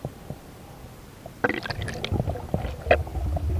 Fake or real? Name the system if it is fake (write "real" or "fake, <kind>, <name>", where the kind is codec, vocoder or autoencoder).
real